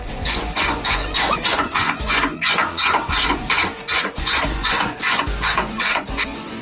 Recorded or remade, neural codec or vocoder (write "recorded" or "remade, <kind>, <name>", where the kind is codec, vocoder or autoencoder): remade, vocoder, Vocos